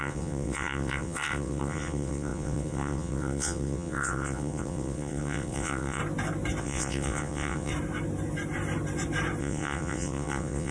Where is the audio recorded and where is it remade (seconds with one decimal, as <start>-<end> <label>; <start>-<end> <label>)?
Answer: 0.0-6.0 remade; 6.0-6.6 recorded; 6.6-7.7 remade; 7.7-9.4 recorded; 9.4-10.7 remade